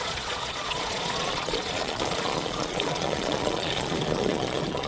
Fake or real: fake